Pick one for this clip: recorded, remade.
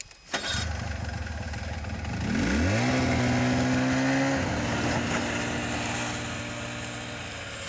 recorded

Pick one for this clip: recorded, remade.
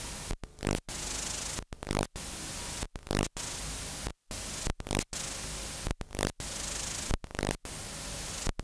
recorded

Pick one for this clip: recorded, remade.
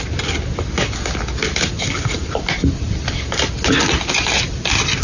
recorded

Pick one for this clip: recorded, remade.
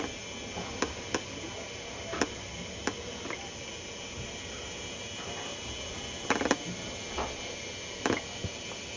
recorded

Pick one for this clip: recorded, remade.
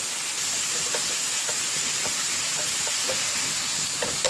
recorded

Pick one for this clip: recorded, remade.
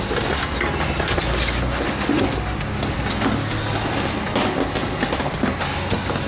recorded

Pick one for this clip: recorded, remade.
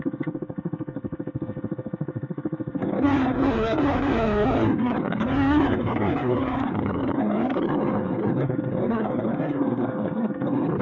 remade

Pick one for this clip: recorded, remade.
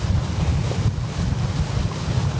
recorded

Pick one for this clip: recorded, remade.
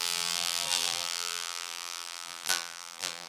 remade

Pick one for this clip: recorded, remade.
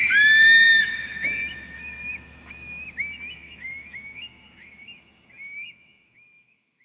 remade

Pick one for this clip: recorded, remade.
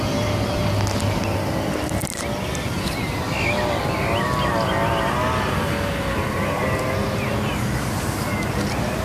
recorded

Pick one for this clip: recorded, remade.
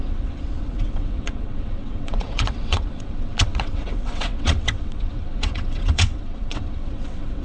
remade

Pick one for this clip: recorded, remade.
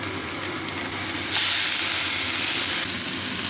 recorded